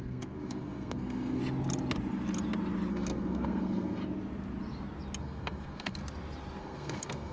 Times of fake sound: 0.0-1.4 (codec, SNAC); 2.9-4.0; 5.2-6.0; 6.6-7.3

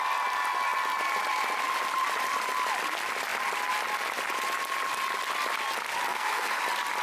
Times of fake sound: 6.1-6.6 (codec, SNAC)

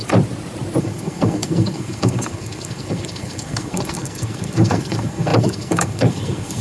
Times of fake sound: 0.8-6.6 (codec, SNAC)

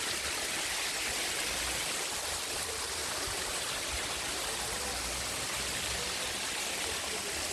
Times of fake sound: none

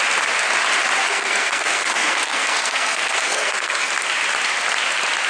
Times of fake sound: 1.0-3.9 (codec, SNAC)

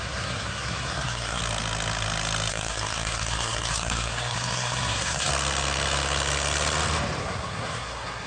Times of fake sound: 0.0-1.4 (codec, SNAC); 2.5-5.3; 7.2-8.3

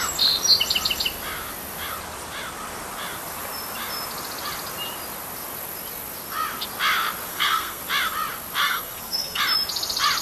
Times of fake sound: 7.3-7.8 (codec, SNAC); 8.6-9.4